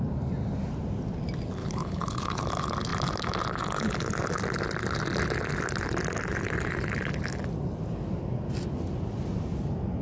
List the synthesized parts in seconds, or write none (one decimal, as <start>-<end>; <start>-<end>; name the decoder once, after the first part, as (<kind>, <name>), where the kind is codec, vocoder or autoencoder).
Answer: 1.6-2.4 (codec, HILCodec)